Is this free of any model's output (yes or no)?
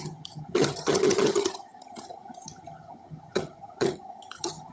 no